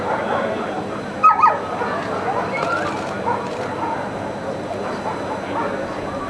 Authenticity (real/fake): real